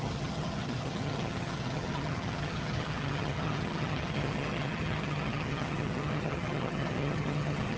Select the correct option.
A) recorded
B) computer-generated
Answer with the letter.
B